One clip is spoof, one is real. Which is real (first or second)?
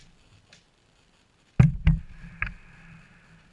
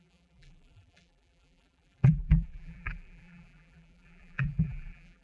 first